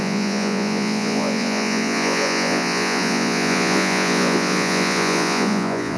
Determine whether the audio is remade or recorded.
remade